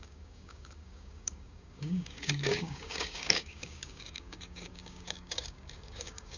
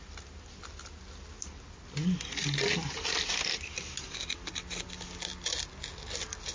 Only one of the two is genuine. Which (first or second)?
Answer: second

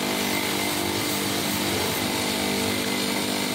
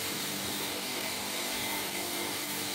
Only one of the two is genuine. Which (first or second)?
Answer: first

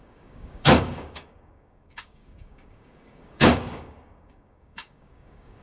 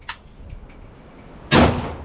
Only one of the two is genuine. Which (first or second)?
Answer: second